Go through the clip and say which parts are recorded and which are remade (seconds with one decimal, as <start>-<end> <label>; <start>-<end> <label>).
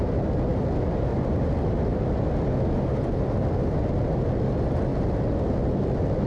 0.0-6.3 recorded